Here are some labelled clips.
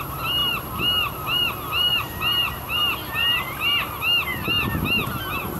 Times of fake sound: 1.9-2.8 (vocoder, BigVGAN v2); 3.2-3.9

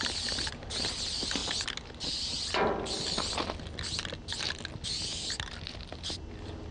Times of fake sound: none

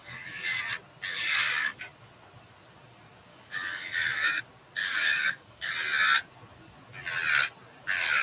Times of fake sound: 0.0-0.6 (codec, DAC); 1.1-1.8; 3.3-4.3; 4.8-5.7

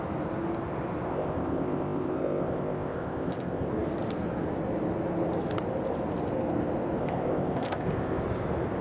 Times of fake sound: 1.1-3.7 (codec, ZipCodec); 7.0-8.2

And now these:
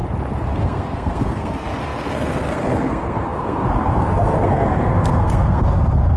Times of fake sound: 0.5-6.2 (codec, SNAC)

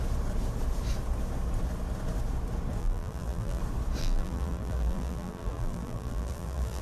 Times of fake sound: 2.8-3.6 (vocoder, BigVGAN v2); 4.0-6.8

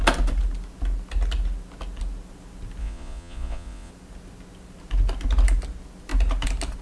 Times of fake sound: 2.8-3.9 (vocoder, Vocos)

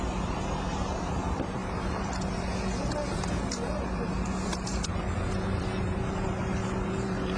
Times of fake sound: 0.0-7.4 (vocoder, BigVGAN v2)